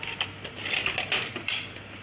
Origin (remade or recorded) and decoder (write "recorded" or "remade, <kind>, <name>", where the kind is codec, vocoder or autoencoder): recorded